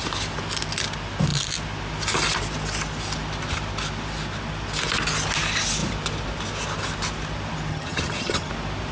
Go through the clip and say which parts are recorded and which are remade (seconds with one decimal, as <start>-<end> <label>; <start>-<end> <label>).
0.0-7.7 recorded; 7.7-8.5 remade; 8.5-8.9 recorded